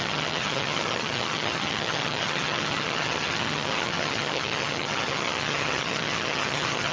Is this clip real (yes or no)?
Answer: no